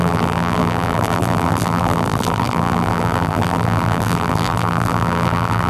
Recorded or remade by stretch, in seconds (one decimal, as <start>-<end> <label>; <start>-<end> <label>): 0.0-5.7 remade